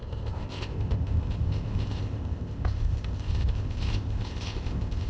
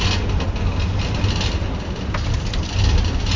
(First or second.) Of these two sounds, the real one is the second